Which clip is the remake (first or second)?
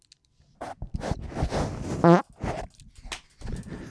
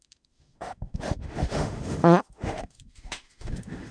second